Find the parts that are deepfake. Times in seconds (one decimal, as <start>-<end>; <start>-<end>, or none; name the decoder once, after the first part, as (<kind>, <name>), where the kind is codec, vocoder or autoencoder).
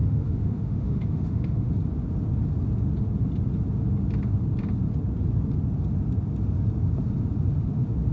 0.0-1.7 (autoencoder, DAC-VAE)